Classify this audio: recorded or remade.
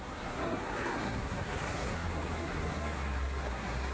remade